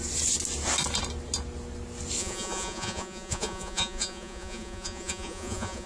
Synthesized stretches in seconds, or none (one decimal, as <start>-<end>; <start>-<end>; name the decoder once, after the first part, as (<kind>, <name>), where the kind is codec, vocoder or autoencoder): 2.2-5.9 (vocoder, Vocos)